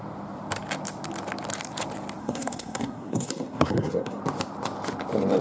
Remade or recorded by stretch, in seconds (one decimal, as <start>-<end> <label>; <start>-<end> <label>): 0.0-2.2 recorded; 2.2-4.2 remade; 4.2-5.4 recorded